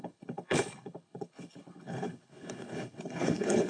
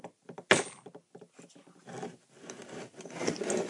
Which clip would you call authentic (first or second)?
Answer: second